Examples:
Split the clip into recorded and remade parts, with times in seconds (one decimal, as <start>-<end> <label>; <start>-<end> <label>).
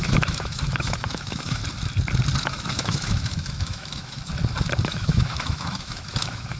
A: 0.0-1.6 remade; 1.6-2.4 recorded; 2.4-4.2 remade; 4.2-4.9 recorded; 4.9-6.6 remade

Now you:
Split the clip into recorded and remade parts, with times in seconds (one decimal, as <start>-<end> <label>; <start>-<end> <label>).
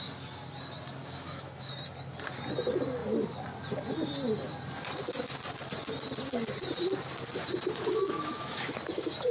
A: 0.0-1.0 recorded; 1.0-1.7 remade; 1.7-7.9 recorded; 7.9-8.6 remade; 8.6-9.3 recorded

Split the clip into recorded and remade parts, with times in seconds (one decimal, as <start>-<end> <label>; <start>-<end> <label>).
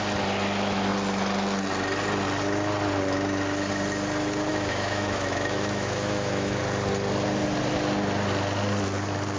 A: 0.0-4.5 recorded; 4.5-6.6 remade; 6.6-9.4 recorded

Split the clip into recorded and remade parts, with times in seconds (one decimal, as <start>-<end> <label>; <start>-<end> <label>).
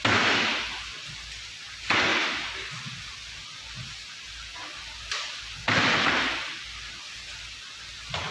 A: 0.0-8.3 recorded